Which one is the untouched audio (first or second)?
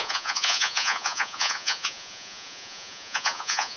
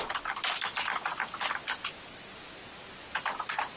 second